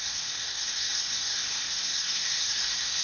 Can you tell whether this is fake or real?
fake